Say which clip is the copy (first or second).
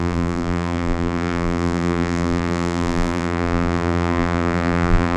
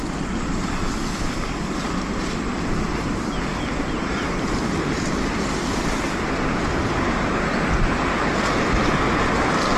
first